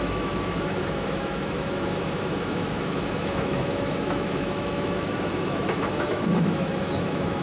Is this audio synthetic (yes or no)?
yes